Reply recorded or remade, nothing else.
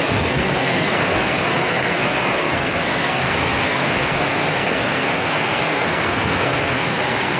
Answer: remade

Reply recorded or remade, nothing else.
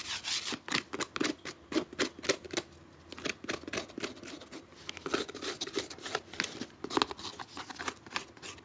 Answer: recorded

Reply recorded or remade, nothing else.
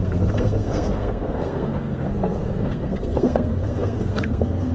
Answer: remade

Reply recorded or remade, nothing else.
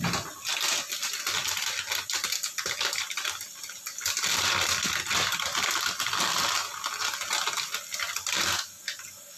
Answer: recorded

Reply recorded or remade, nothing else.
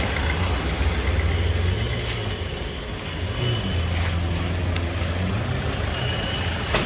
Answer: recorded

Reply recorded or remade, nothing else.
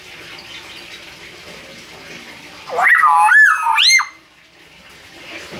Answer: recorded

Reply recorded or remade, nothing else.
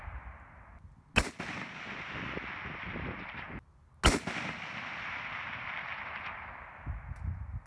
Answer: recorded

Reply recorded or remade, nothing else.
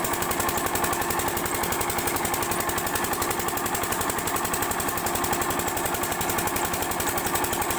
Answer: recorded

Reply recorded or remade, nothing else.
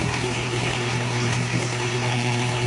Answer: remade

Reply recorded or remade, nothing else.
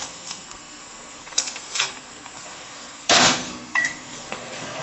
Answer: remade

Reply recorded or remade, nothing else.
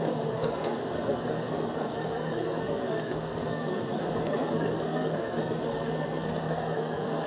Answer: remade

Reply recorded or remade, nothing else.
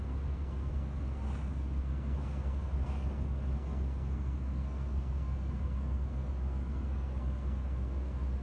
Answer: remade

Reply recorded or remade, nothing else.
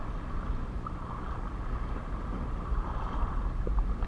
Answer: recorded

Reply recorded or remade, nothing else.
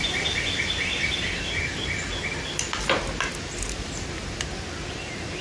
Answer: recorded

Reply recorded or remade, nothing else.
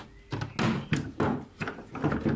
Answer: recorded